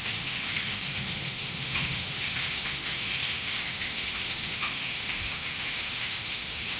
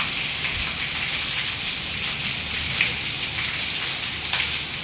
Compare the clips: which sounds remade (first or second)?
first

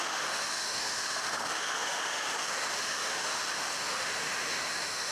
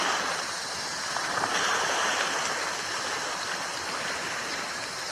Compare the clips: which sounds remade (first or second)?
first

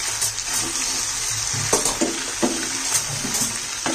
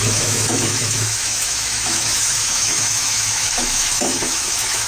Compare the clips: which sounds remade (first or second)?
second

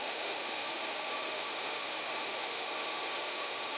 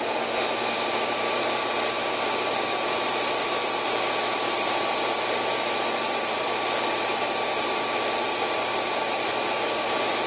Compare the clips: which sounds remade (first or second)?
first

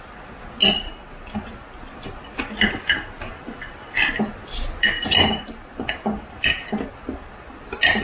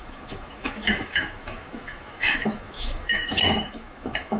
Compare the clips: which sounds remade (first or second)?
second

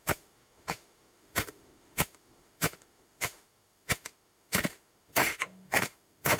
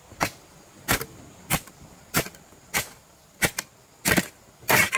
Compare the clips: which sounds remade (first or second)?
first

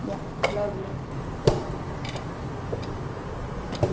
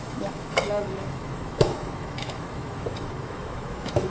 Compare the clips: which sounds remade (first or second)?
second